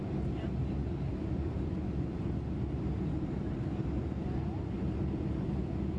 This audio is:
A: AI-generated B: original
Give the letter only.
B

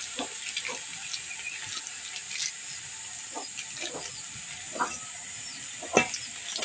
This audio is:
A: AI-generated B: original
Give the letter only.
B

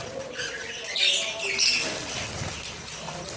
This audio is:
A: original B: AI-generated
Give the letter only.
A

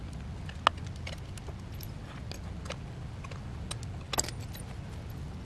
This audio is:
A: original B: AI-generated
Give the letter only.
A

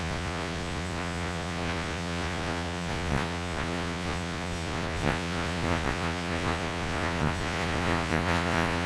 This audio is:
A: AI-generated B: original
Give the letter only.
A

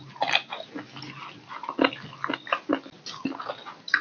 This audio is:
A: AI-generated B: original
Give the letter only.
B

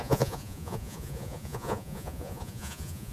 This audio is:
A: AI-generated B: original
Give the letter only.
A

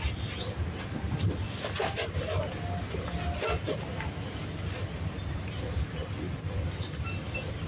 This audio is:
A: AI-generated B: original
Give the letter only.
B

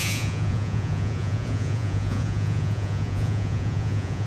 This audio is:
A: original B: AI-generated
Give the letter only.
B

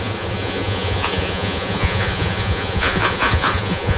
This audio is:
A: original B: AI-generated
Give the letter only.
B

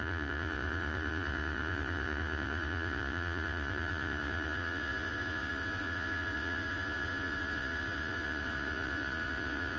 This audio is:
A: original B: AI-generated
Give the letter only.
B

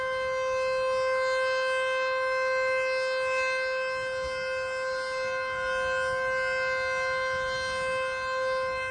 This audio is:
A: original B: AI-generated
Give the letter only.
A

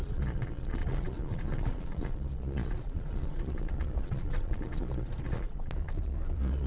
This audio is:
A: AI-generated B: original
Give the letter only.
A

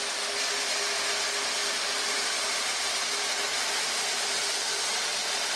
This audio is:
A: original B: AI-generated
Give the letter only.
A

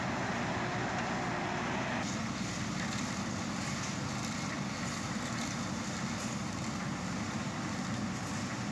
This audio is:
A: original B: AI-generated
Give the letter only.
A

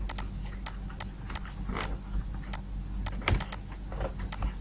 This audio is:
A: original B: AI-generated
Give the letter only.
A